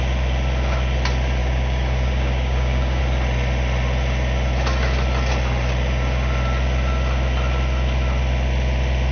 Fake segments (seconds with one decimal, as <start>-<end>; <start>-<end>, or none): 1.4-3.0

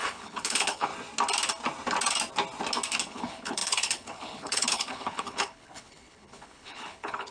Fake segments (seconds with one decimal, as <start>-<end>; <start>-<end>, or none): 0.0-0.9; 3.1-7.3